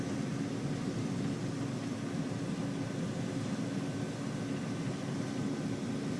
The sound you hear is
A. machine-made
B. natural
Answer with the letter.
B